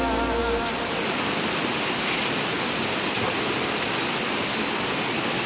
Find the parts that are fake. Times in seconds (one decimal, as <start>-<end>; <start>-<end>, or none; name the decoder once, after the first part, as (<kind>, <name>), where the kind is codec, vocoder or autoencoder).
none